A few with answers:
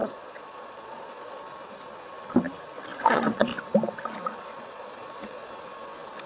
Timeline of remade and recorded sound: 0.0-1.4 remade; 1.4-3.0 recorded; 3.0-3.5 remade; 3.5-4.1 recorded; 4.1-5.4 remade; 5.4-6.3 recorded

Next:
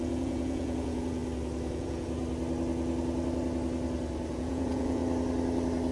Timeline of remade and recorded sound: 0.0-1.2 remade; 1.2-1.7 recorded; 1.7-2.2 remade; 2.2-4.3 recorded; 4.3-5.0 remade; 5.0-5.9 recorded

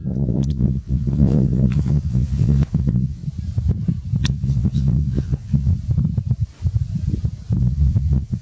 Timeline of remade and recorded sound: 0.0-3.2 remade; 3.2-4.2 recorded; 4.2-5.7 remade; 5.7-7.6 recorded; 7.6-8.4 remade